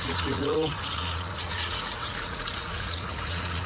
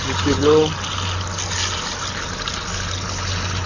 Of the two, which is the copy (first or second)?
first